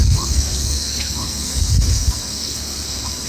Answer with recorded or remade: remade